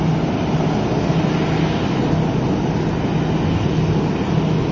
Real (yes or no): yes